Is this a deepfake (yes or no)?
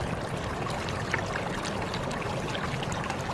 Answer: no